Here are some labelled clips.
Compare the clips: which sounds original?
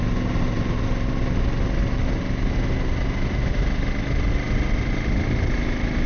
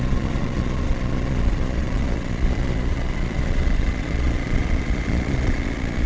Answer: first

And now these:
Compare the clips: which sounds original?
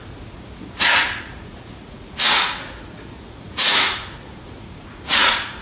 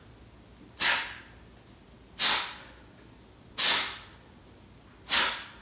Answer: second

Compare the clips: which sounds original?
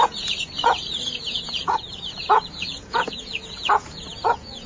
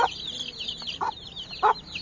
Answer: second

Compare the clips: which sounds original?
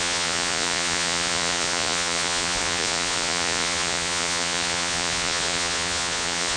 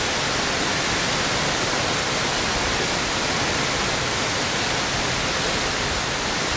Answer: second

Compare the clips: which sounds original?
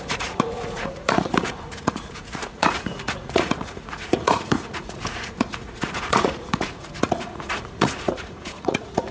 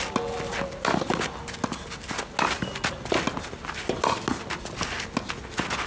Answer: second